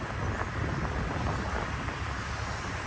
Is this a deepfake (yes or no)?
no